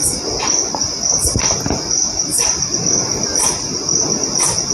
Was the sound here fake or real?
real